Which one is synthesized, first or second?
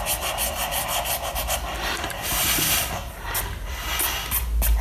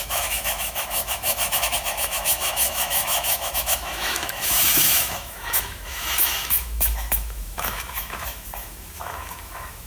second